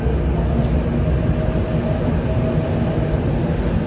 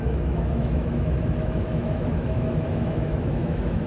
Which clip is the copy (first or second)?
second